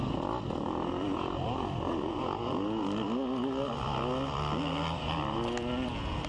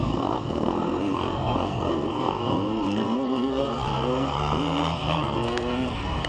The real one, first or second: first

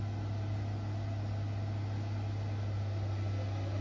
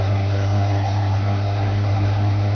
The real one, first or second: first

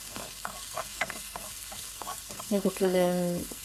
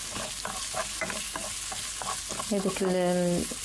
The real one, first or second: second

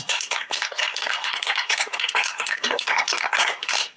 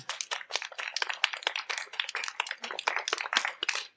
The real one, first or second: second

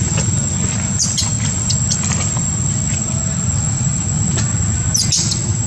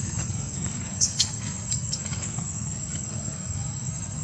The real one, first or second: first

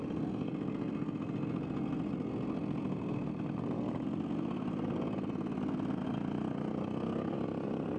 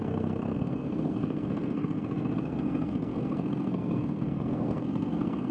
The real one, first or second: first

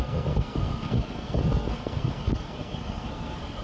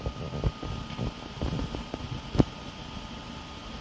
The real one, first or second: second